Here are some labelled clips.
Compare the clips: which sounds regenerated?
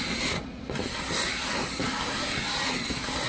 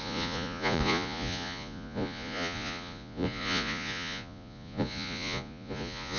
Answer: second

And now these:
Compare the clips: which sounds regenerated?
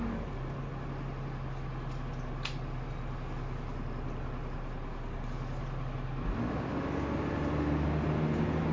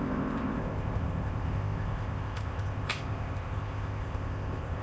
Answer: second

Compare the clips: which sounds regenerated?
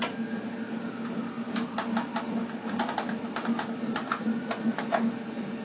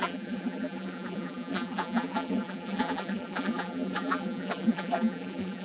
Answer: second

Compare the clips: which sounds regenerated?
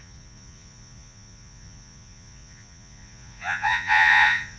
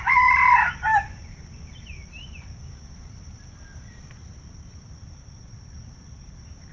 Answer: first